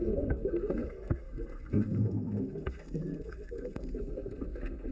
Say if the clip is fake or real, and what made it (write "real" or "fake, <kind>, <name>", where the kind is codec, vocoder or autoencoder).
fake, codec, SNAC